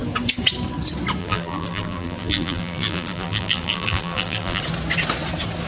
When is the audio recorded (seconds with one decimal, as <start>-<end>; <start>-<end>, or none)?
0.0-1.2; 4.6-5.7